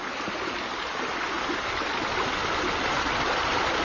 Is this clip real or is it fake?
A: real